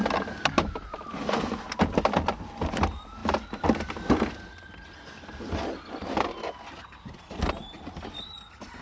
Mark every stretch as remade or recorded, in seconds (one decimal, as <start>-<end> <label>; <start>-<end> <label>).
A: 0.0-8.8 recorded